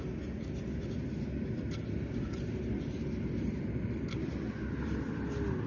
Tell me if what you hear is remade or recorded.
recorded